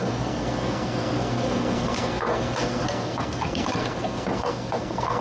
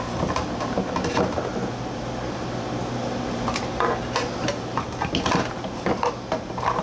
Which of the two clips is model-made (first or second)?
first